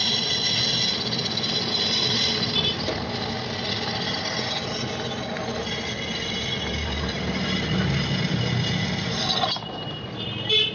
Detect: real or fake real